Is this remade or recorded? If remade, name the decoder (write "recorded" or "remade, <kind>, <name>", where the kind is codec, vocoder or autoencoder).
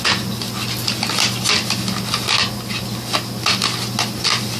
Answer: recorded